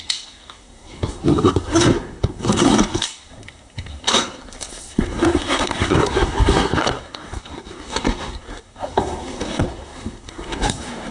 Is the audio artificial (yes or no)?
yes